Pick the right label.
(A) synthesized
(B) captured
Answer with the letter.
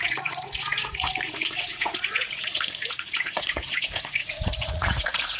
A